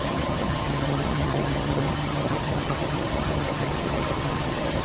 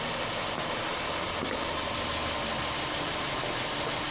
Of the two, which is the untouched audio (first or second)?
second